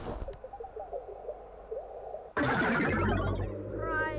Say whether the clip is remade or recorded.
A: recorded